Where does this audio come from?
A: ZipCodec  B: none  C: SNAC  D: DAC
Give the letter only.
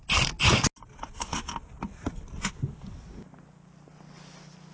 B